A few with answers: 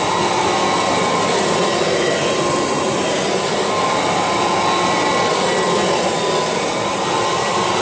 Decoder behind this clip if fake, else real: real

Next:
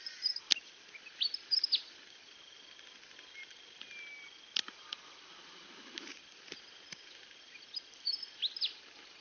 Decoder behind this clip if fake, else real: real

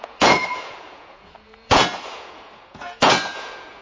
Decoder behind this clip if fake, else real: fake, vocoder, Vocos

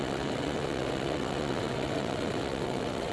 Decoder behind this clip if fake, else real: fake, vocoder, WaveNeXt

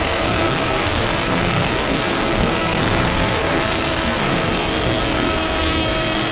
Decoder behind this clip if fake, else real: fake, codec, SNAC